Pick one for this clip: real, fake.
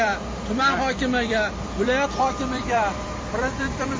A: fake